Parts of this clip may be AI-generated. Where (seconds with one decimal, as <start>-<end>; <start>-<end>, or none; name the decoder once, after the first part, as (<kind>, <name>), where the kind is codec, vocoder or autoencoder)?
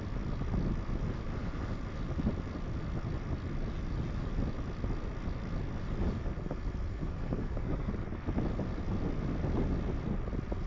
6.9-7.9 (codec, SNAC)